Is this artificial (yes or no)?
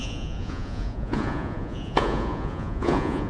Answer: yes